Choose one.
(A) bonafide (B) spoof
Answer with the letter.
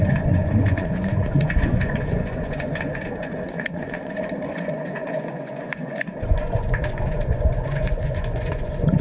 B